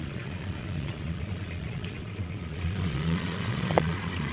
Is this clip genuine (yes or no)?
no